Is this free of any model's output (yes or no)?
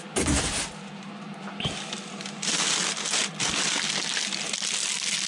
yes